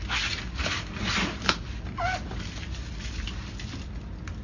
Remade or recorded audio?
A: recorded